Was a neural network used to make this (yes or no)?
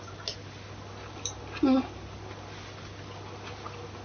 no